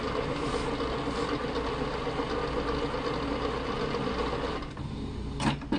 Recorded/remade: recorded